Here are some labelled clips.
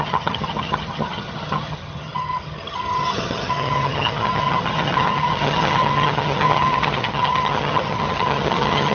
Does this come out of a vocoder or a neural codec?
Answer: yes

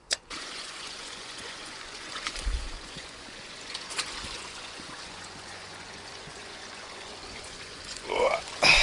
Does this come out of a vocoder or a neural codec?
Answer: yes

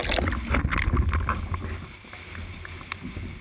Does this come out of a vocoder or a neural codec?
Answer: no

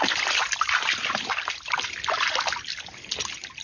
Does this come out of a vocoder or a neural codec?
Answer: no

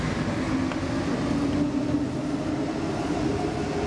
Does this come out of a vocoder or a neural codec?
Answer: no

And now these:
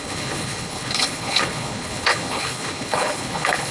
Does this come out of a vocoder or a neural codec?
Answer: yes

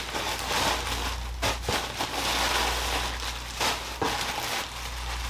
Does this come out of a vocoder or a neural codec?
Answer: no